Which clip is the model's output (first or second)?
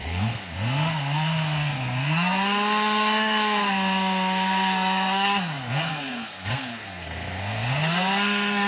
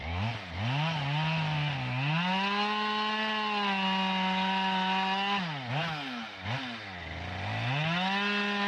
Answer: first